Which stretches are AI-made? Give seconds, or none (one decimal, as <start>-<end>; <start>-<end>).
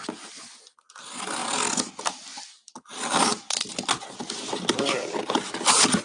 none